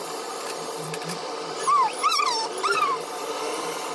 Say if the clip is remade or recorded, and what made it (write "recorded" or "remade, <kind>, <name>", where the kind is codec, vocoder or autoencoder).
remade, vocoder, BigVGAN v2